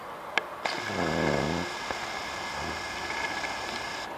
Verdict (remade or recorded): recorded